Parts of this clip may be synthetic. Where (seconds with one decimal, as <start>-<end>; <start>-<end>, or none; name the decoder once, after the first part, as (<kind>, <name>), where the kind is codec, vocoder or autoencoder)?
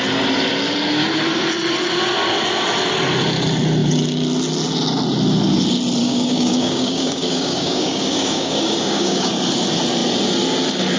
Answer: 6.0-9.3 (codec, DAC)